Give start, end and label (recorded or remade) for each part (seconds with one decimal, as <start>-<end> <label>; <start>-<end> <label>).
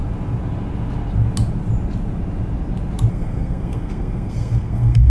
0.0-3.1 recorded; 3.1-5.1 remade